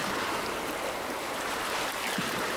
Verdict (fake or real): real